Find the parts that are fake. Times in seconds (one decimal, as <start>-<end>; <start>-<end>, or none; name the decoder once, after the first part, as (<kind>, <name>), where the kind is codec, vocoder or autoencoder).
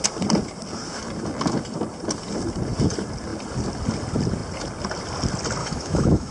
5.6-6.3 (autoencoder, DAC-VAE)